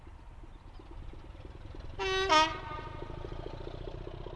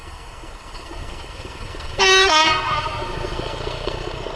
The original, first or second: first